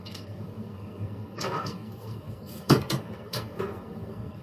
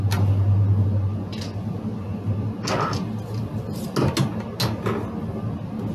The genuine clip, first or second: second